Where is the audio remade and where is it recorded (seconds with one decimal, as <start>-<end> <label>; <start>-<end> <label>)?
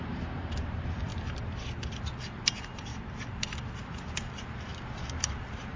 0.0-1.1 remade; 1.1-2.2 recorded; 2.2-2.9 remade; 2.9-3.9 recorded; 3.9-5.8 remade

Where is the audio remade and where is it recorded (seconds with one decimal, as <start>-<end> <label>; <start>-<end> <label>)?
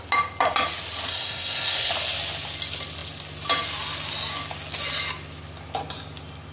0.0-1.1 recorded; 1.1-1.9 remade; 1.9-6.5 recorded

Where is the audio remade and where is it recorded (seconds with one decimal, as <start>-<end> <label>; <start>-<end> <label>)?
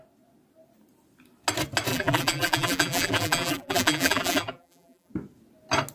0.0-1.9 recorded; 1.9-5.1 remade; 5.1-5.9 recorded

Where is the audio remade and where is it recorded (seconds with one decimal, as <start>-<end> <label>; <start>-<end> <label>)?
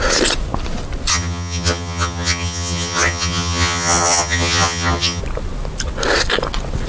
0.0-1.1 recorded; 1.1-5.2 remade; 5.2-6.9 recorded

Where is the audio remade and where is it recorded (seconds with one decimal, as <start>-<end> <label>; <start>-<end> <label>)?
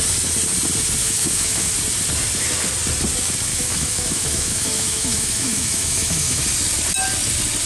0.0-1.0 recorded; 1.0-1.7 remade; 1.7-3.5 recorded; 3.5-6.4 remade; 6.4-7.7 recorded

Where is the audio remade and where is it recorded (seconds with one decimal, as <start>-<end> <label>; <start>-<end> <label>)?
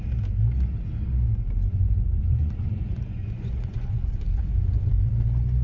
0.0-1.7 recorded; 1.7-5.1 remade; 5.1-5.6 recorded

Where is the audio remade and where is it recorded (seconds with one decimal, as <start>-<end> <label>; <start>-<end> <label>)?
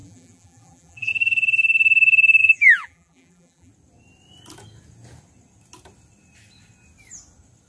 0.0-1.1 remade; 1.1-2.4 recorded; 2.4-3.7 remade; 3.7-7.7 recorded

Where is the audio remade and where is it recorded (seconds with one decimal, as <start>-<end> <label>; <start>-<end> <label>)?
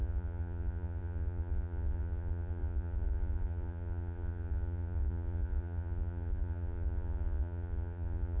0.0-8.4 remade